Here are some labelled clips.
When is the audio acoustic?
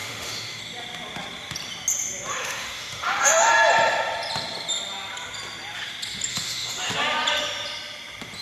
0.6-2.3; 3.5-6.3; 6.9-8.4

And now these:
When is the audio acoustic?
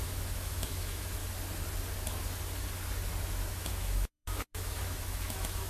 1.2-3.5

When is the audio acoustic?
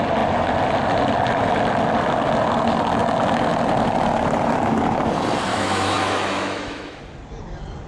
0.0-5.5; 7.0-7.9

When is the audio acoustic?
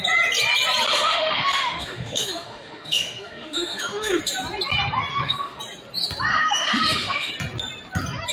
0.0-0.9; 4.2-5.1; 5.6-6.3; 7.3-8.3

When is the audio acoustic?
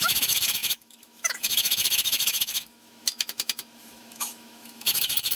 none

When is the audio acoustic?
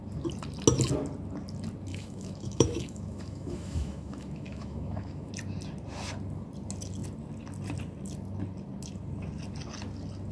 0.0-1.9; 5.3-10.3